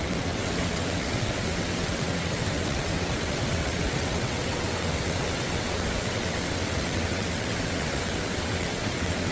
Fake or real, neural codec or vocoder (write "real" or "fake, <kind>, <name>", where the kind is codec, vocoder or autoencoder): fake, vocoder, WaveNeXt